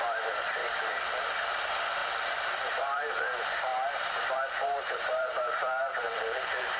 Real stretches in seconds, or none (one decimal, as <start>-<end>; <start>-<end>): 0.6-1.2; 3.7-4.2